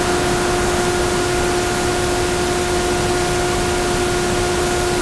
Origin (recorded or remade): recorded